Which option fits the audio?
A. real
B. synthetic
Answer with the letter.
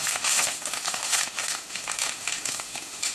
B